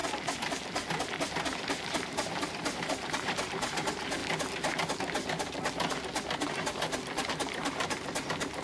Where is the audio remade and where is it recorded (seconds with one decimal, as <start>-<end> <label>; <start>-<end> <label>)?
0.0-1.1 recorded; 1.1-4.2 remade; 4.2-7.3 recorded; 7.3-8.6 remade